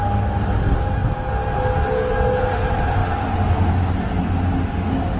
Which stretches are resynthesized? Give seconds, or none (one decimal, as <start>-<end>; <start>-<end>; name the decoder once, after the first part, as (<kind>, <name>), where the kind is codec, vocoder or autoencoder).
none